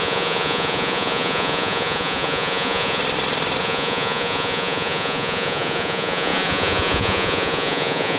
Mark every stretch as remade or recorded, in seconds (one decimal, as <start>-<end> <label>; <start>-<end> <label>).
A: 0.0-3.0 remade; 3.0-3.6 recorded; 3.6-8.2 remade